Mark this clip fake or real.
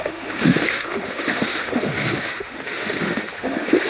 fake